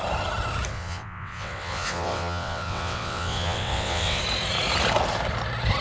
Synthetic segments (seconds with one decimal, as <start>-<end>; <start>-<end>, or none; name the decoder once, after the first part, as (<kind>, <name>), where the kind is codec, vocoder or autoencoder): 0.7-4.2 (vocoder, WaveNeXt)